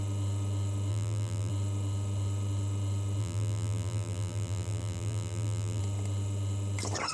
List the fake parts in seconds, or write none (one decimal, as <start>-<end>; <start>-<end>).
0.9-1.5; 3.2-5.8